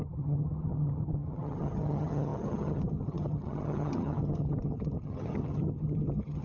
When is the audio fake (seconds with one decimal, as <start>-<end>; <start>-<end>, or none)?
0.0-6.4